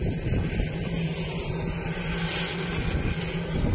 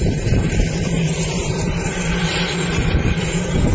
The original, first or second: first